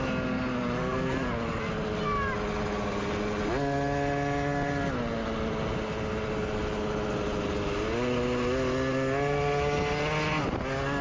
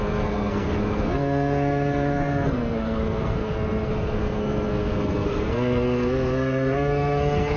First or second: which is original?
first